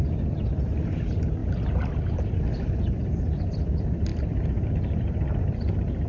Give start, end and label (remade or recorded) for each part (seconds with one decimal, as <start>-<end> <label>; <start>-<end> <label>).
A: 0.0-4.1 recorded; 4.1-5.0 remade; 5.0-6.1 recorded